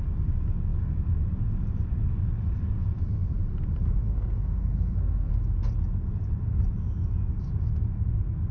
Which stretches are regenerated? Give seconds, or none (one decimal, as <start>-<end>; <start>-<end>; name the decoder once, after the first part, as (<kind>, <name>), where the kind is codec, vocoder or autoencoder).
4.0-5.3 (codec, SNAC)